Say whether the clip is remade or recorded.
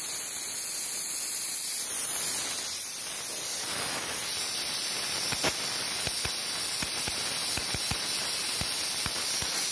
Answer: recorded